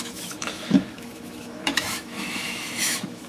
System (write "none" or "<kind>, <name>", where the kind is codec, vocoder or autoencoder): autoencoder, DAC-VAE